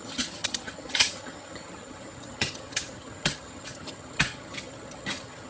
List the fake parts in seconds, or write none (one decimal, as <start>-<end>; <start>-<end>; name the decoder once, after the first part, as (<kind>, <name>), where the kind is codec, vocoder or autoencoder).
0.0-5.5 (vocoder, HiFi-GAN)